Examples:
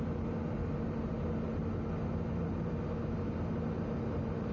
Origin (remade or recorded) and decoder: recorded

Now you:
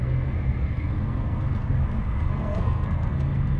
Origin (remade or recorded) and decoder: remade, codec, SNAC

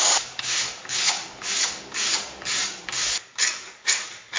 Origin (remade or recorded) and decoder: remade, codec, DAC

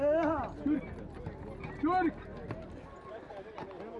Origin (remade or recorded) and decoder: recorded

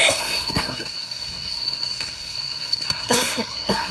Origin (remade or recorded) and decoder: remade, codec, SNAC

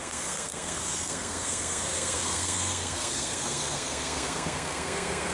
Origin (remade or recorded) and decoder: remade, codec, SNAC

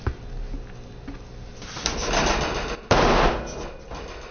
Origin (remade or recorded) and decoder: recorded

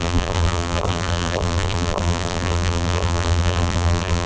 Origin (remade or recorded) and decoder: remade, vocoder, BigVGAN v2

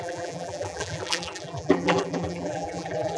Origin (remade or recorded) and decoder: remade, vocoder, BigVGAN v2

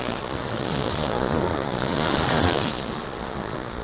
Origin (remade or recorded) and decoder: remade, vocoder, Vocos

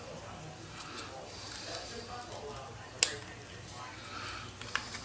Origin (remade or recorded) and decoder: recorded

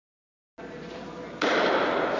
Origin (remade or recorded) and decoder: recorded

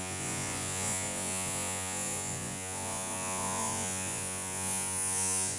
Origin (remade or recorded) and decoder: remade, vocoder, Vocos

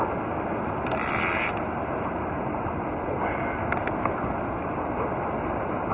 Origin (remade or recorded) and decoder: remade, vocoder, BigVGAN v2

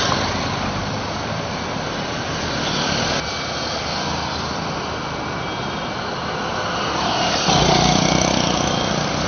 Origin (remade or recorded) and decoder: recorded